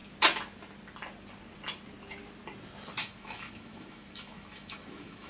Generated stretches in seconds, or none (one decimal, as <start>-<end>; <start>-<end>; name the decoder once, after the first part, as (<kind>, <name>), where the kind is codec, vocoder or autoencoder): 3.0-5.3 (autoencoder, DAC-VAE)